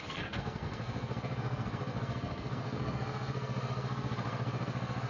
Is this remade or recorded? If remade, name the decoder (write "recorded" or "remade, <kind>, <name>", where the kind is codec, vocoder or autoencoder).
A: remade, codec, SNAC